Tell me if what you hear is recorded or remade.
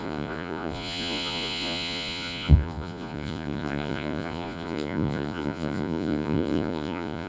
remade